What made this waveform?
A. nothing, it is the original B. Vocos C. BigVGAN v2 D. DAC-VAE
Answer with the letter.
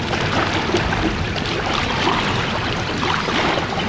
C